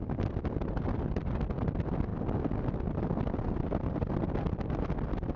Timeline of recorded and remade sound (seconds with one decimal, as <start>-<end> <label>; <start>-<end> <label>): 0.0-5.4 recorded